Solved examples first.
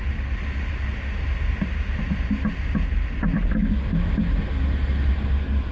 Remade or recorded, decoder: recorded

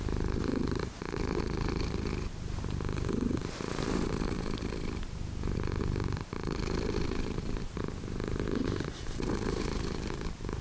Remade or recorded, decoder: remade, vocoder, BigVGAN v2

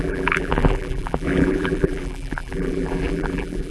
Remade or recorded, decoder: remade, vocoder, BigVGAN v2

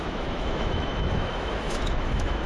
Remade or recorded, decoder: remade, autoencoder, DAC-VAE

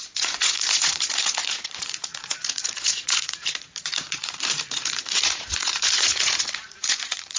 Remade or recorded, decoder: remade, vocoder, Vocos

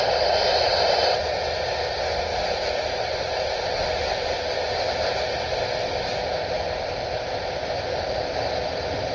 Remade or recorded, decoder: recorded